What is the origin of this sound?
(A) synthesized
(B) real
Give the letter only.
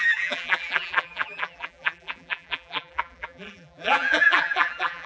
A